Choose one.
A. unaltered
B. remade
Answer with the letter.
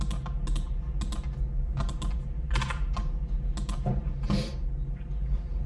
A